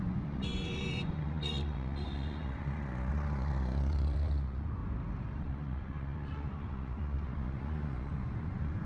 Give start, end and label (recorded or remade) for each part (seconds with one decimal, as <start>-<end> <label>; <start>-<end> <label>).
0.0-4.8 remade; 4.8-5.4 recorded; 5.4-8.9 remade